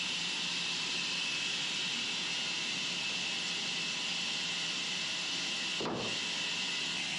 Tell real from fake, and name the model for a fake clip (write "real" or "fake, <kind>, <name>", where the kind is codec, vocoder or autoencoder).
real